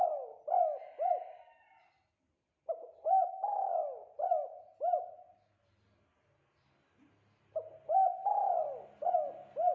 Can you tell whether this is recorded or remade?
recorded